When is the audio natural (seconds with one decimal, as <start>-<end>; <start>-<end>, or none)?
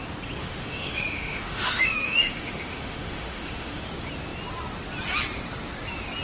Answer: 0.0-0.4; 3.8-6.2